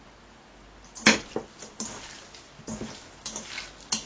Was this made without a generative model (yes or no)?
yes